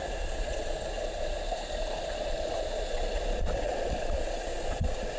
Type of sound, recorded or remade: remade